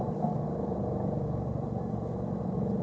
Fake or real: real